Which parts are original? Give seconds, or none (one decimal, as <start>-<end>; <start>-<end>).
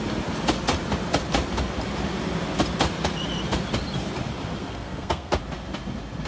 0.0-4.6; 5.4-6.3